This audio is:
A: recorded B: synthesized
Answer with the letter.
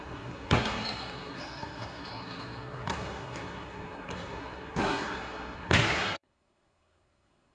B